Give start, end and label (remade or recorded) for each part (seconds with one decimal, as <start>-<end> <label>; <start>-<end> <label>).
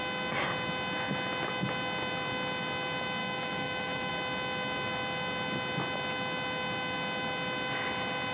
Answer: 0.0-3.2 recorded; 3.2-4.1 remade; 4.1-8.3 recorded